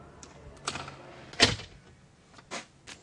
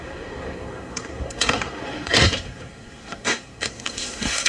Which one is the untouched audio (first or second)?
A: first